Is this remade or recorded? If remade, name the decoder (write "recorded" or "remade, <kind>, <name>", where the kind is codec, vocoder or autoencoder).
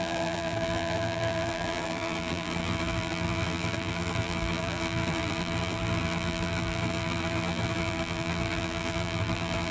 remade, vocoder, BigVGAN v2